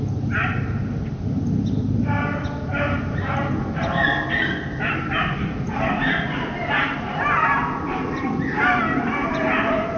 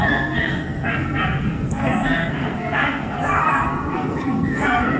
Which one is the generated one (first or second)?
second